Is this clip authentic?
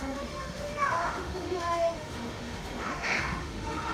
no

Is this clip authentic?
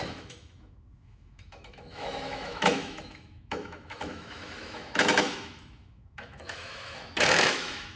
no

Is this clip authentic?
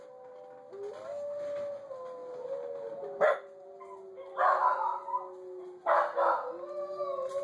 yes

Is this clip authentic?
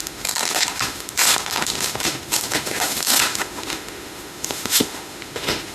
no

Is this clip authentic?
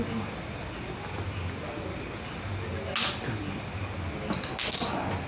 yes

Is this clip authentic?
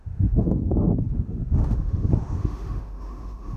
no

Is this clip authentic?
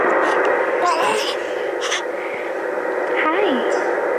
yes